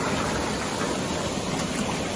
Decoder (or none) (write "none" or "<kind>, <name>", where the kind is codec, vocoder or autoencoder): none